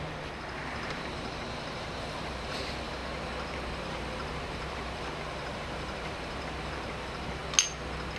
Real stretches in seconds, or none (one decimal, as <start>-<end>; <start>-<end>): 3.0-3.8; 7.4-8.2